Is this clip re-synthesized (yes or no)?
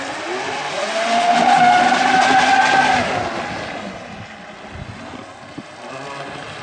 no